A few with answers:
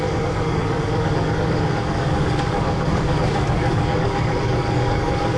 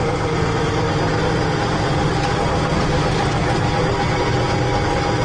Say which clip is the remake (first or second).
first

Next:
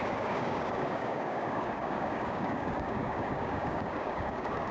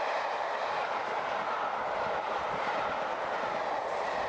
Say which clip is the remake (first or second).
first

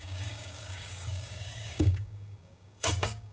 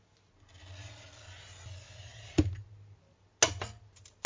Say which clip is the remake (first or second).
first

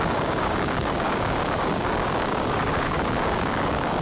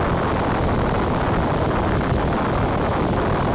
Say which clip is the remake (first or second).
first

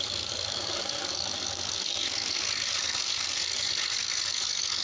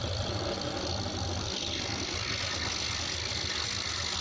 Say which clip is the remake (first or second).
first